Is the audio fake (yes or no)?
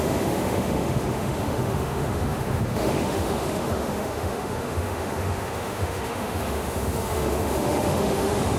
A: yes